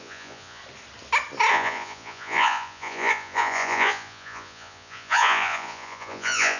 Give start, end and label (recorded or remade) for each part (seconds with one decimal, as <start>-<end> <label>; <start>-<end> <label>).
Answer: 0.0-0.6 remade; 0.6-1.5 recorded; 1.5-6.6 remade